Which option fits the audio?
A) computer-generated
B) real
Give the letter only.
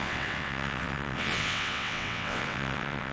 A